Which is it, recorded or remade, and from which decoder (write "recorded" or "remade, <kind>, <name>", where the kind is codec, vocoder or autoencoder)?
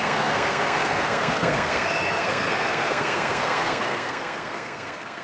remade, codec, SNAC